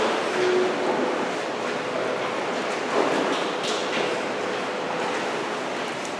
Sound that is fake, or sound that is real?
real